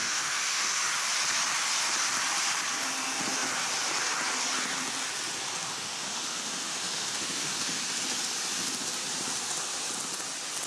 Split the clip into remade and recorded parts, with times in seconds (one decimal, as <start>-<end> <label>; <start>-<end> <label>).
0.0-0.9 remade; 0.9-5.7 recorded; 5.7-7.8 remade; 7.8-10.7 recorded